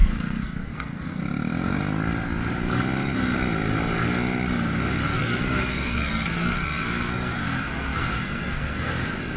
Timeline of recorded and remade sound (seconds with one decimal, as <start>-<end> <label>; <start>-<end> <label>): 0.0-1.2 remade; 1.2-5.1 recorded; 5.1-8.9 remade; 8.9-9.4 recorded

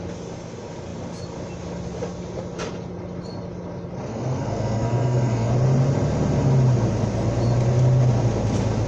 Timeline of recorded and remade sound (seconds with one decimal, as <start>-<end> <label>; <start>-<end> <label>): 0.0-4.1 recorded; 4.1-5.5 remade; 5.5-8.9 recorded

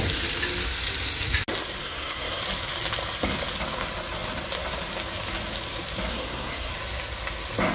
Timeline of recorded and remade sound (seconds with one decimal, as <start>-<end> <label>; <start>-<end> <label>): 0.0-1.8 recorded; 1.8-2.4 remade; 2.4-6.1 recorded; 6.1-6.7 remade; 6.7-7.7 recorded